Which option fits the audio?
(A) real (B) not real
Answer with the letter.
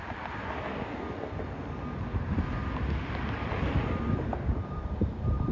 A